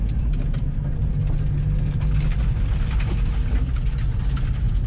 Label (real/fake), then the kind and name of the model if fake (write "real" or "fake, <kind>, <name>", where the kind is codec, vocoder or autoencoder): real